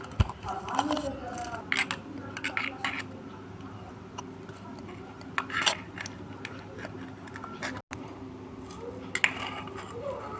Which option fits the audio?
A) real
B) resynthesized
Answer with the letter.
A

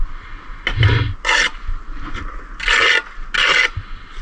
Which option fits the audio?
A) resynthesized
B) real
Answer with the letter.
B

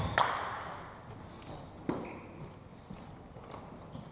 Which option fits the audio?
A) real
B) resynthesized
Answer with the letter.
A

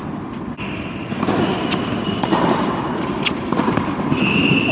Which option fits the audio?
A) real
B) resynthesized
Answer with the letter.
A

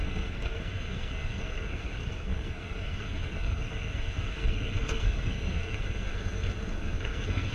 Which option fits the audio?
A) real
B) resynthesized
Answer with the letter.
B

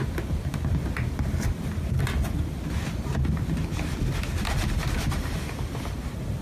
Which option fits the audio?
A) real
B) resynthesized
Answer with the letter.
A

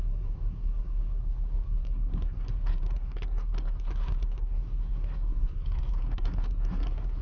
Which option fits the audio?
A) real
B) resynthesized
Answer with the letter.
B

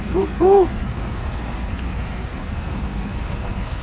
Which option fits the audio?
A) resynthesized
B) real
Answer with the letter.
A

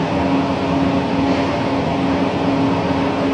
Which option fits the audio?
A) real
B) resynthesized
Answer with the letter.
A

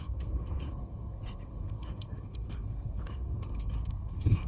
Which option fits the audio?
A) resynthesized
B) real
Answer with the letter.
A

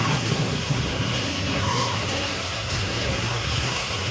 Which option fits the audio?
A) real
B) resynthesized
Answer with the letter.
B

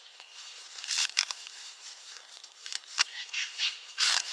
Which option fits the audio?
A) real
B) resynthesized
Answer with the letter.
B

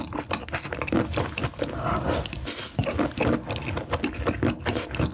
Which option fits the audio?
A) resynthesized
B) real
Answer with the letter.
B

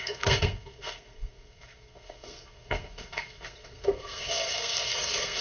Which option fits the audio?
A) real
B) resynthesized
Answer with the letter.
B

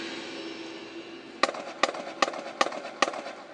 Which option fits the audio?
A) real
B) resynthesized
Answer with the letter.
A